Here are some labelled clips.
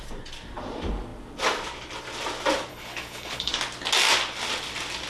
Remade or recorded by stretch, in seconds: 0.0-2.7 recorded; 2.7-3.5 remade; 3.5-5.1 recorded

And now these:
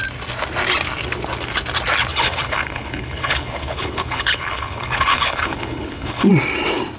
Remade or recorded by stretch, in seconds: 0.0-2.1 recorded; 2.1-6.3 remade; 6.3-7.0 recorded

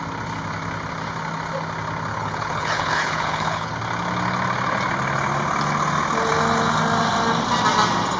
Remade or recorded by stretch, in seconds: 0.0-2.1 recorded; 2.1-3.7 remade; 3.7-8.2 recorded